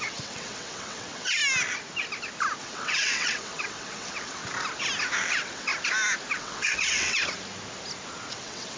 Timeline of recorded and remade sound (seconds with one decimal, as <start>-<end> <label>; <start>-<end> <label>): 0.0-1.4 remade; 1.4-2.6 recorded; 2.6-4.4 remade; 4.4-5.3 recorded; 5.3-5.7 remade; 5.7-6.3 recorded; 6.3-7.2 remade; 7.2-8.3 recorded; 8.3-8.8 remade